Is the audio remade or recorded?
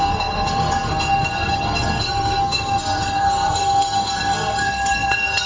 remade